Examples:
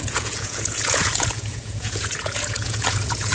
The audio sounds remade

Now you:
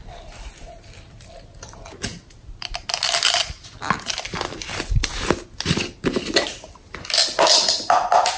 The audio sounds recorded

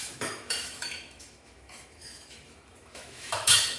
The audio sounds remade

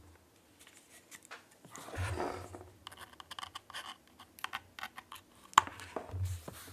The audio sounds recorded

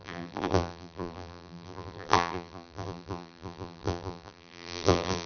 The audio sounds remade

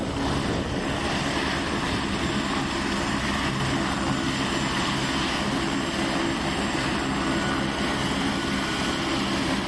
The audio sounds recorded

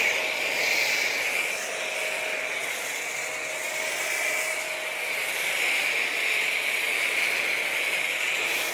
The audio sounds recorded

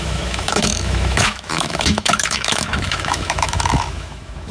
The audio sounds remade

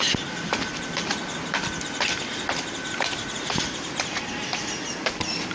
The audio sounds recorded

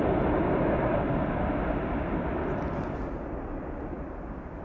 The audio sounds recorded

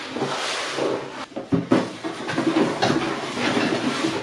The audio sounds recorded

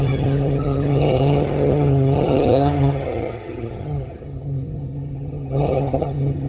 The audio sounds remade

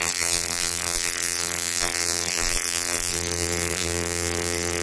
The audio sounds remade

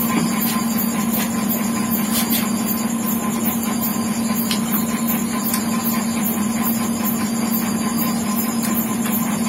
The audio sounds recorded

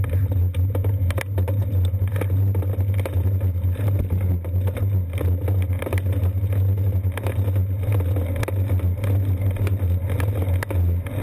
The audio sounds recorded